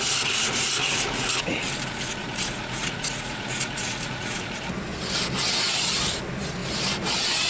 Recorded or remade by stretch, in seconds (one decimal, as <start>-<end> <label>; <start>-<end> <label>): 0.0-0.8 recorded; 0.8-1.7 remade; 1.7-2.2 recorded; 2.2-4.7 remade; 4.7-7.5 recorded